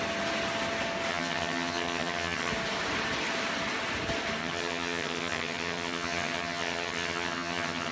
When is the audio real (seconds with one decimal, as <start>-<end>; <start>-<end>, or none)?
0.0-1.1; 2.5-4.4